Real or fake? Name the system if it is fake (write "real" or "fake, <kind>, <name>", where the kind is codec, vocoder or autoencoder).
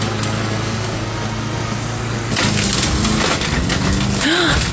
real